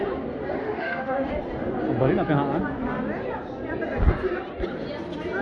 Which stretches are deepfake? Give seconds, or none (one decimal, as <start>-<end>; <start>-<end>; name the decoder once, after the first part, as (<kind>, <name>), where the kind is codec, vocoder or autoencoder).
0.6-1.3 (autoencoder, DAC-VAE)